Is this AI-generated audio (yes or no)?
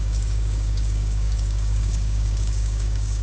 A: yes